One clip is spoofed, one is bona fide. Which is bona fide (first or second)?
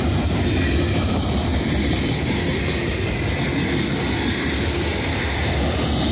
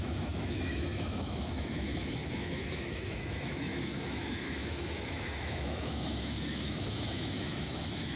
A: first